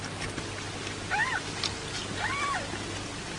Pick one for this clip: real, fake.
real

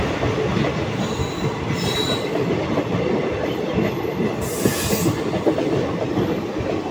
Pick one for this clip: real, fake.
real